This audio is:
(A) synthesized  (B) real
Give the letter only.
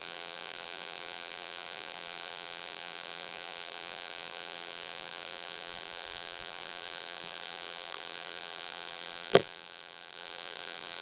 A